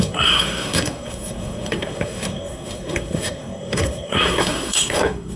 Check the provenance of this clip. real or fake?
fake